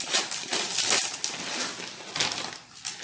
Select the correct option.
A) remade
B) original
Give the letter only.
B